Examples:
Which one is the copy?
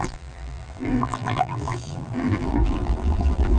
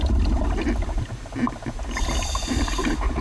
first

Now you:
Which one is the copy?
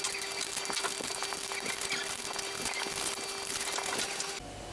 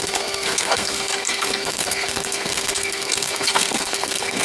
second